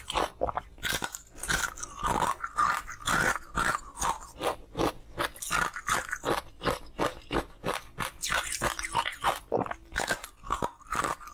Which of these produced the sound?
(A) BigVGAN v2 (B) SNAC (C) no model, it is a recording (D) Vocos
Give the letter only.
C